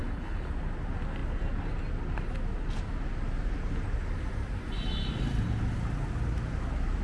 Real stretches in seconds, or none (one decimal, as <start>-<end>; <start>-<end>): 0.5-7.0

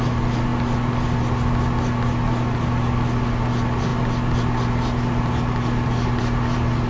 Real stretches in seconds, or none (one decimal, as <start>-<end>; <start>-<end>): 0.0-6.9